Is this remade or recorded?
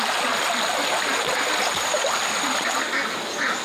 recorded